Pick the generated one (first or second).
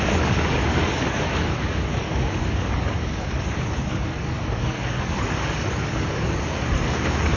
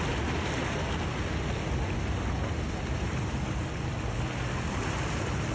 first